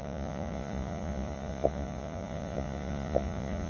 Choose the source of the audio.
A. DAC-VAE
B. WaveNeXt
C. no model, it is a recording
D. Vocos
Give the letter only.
D